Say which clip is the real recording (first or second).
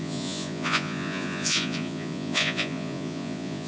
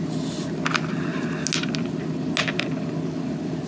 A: second